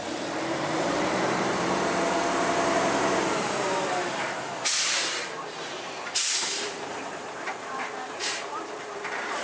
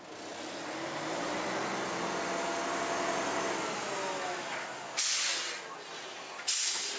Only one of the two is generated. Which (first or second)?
first